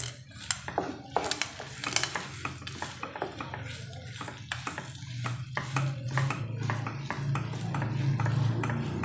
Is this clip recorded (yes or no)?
yes